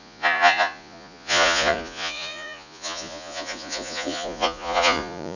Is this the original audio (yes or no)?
no